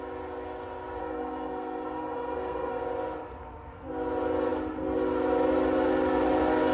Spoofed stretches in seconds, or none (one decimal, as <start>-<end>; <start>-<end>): 1.0-2.8